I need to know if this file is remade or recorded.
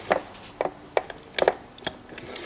recorded